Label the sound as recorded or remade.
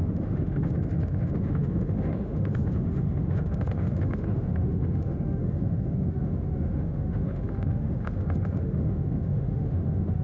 remade